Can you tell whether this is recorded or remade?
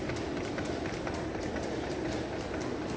recorded